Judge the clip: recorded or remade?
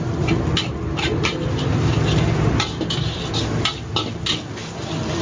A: recorded